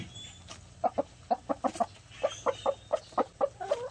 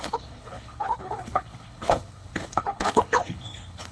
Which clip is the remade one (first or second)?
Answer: second